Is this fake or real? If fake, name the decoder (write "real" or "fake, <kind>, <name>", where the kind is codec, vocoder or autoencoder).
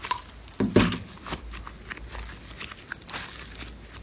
real